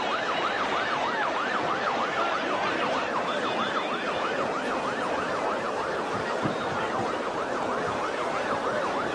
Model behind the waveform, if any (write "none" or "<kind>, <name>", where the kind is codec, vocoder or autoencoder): none